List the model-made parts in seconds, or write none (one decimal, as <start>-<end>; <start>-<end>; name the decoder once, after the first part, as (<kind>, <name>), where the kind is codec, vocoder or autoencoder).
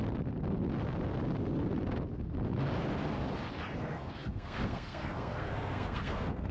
3.8-6.5 (codec, SNAC)